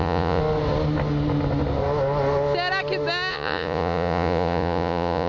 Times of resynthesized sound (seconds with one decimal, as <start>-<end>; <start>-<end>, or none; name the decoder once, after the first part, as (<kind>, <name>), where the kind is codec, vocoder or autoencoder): 0.0-0.4 (vocoder, Vocos); 3.3-5.3

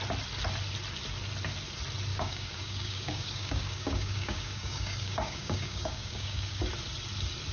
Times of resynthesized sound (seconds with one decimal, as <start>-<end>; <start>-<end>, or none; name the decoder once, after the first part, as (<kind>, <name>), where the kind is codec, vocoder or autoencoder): 2.1-6.6 (codec, DAC)

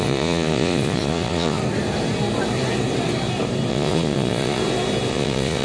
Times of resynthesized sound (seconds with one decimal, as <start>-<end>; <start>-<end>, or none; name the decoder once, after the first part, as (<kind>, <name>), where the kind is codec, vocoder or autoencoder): 0.0-1.6 (vocoder, Vocos); 3.7-4.6; 5.1-5.6

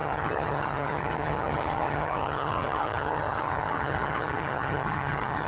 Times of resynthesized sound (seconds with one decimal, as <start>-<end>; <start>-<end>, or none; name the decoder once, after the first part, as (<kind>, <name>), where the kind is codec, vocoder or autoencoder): 0.0-5.5 (vocoder, HiFi-GAN)

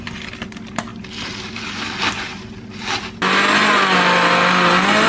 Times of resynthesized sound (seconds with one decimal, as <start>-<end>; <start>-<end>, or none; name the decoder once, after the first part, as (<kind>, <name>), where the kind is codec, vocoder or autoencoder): none

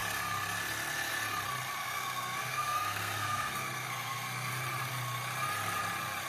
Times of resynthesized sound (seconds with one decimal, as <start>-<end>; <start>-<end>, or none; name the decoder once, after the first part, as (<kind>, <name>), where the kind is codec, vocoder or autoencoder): 1.8-4.5 (codec, SNAC)

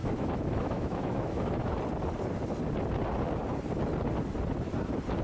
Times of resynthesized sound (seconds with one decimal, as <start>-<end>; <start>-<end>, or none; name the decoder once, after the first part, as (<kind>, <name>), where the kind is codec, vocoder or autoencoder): 0.0-1.8 (autoencoder, DAC-VAE)

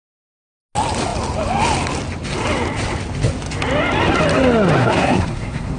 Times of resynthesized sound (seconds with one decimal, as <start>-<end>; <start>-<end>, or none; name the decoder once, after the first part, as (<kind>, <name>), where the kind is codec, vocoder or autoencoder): 4.8-5.8 (codec, SNAC)